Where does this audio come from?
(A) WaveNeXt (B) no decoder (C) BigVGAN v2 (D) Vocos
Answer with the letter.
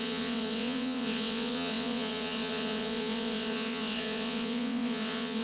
A